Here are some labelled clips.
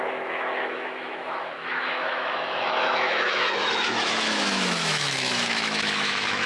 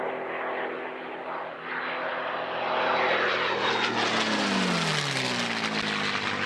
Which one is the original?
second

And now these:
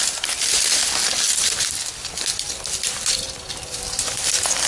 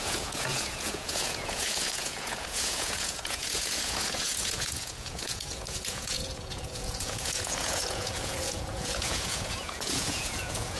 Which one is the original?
first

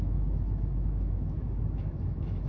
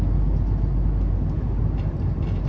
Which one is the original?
second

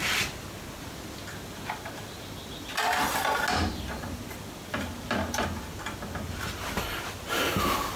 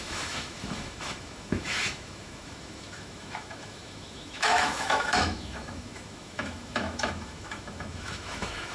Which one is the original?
first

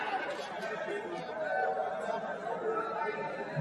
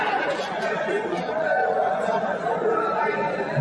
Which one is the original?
first